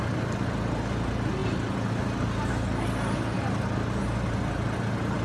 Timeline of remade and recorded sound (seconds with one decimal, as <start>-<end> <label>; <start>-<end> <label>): 0.0-5.2 recorded